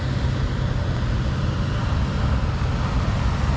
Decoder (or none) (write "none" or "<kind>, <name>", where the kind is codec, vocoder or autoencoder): none